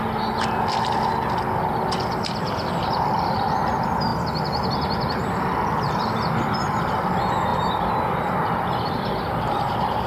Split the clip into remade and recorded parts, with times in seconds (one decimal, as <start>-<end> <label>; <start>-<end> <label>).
0.0-10.1 recorded